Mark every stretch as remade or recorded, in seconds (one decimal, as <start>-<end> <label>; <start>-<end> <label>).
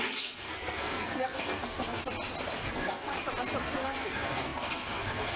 0.0-2.0 remade; 2.0-2.6 recorded; 2.6-3.1 remade; 3.1-3.6 recorded; 3.6-5.4 remade